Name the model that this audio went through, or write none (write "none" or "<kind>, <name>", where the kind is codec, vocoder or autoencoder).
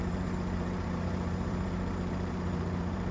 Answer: vocoder, BigVGAN v2